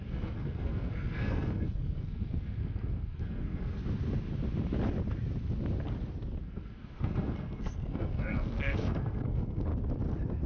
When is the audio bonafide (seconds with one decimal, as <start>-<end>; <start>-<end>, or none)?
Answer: 3.8-6.4; 9.7-10.5